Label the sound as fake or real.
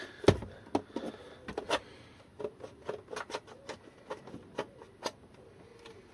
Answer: real